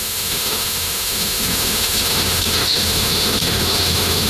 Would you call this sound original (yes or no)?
no